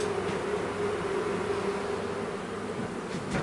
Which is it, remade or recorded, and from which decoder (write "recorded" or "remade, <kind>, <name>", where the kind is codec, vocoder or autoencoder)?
recorded